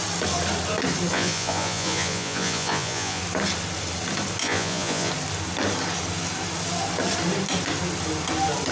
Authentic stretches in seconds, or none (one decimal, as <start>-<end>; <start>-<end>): 0.0-1.1; 3.2-4.4; 5.1-8.7